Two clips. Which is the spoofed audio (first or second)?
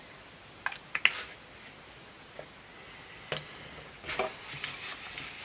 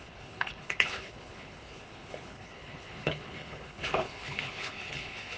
second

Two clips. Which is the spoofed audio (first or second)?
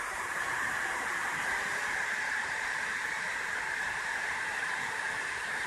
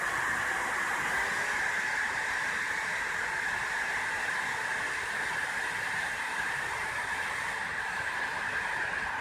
first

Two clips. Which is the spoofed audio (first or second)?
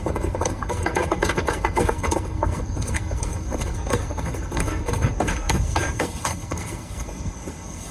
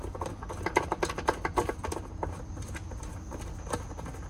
first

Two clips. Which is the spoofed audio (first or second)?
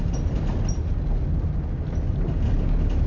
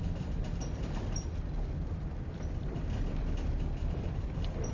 second